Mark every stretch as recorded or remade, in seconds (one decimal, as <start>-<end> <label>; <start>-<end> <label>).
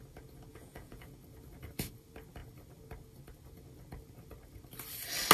0.0-0.5 recorded; 0.5-1.1 remade; 1.1-5.3 recorded